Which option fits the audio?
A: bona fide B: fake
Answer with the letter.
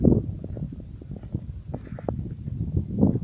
A